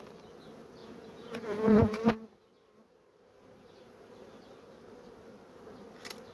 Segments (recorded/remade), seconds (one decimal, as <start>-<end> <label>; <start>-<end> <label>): 0.0-0.8 recorded; 0.8-2.1 remade; 2.1-6.3 recorded